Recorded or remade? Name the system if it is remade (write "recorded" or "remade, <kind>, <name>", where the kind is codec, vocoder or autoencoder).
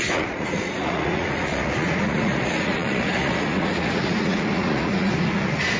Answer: remade, vocoder, Vocos